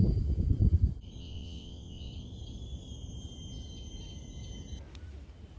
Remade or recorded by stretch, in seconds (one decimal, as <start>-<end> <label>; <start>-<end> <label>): 0.0-1.2 recorded; 1.2-2.1 remade; 2.1-5.6 recorded